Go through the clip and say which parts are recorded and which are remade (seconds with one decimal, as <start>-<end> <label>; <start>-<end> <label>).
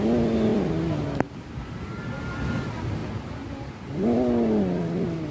0.0-0.5 recorded; 0.5-2.2 remade; 2.2-3.0 recorded; 3.0-4.6 remade; 4.6-5.3 recorded